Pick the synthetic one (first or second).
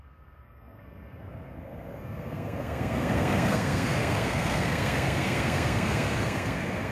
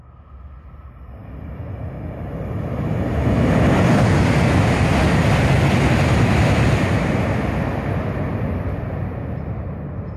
first